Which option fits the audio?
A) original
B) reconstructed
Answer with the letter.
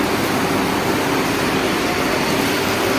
A